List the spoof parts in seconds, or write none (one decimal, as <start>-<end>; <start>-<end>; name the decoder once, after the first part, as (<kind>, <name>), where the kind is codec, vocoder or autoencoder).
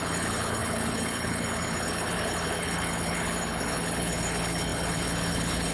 0.0-5.7 (codec, HILCodec)